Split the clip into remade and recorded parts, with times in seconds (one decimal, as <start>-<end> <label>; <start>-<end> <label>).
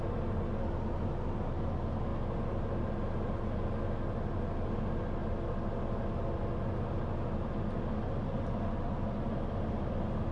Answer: 0.0-10.3 recorded